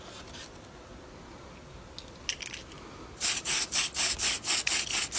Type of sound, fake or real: real